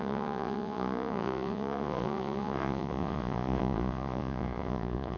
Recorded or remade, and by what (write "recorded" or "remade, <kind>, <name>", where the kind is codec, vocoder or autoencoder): remade, vocoder, Vocos